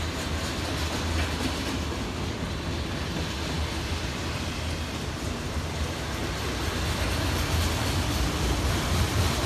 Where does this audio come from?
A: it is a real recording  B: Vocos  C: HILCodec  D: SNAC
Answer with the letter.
A